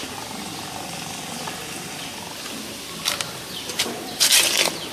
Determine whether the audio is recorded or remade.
recorded